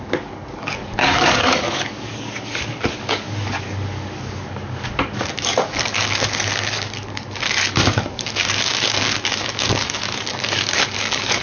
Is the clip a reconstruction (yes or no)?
yes